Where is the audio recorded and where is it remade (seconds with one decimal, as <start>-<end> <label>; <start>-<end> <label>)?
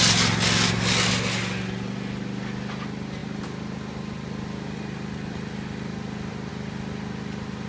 0.0-7.7 recorded